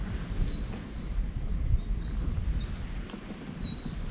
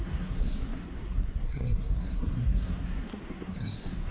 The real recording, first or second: first